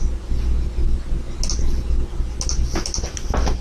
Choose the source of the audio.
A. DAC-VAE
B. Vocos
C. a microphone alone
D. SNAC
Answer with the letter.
C